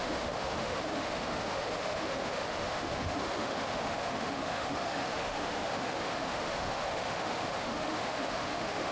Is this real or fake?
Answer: fake